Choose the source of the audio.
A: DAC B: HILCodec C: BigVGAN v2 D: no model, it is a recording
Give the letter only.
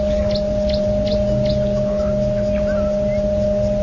D